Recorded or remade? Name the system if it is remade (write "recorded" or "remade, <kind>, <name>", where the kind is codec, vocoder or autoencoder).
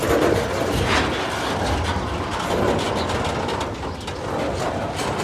recorded